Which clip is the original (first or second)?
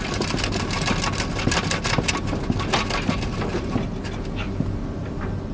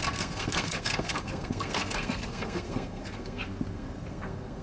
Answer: first